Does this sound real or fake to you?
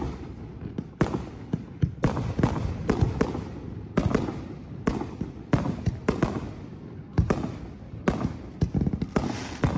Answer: real